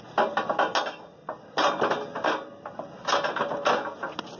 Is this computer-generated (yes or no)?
no